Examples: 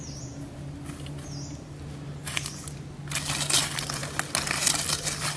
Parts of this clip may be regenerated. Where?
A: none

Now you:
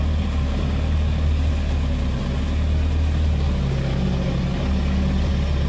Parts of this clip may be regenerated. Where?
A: none

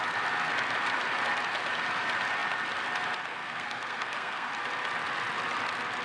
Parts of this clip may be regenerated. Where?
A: 3.3-4.5 (codec, SNAC)

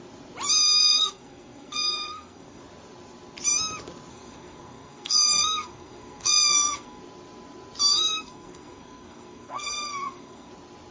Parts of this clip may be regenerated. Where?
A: 0.8-2.6 (codec, SNAC); 4.1-7.0; 7.9-10.5